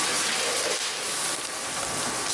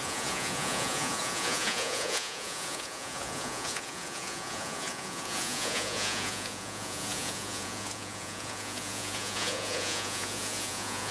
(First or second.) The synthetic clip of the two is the second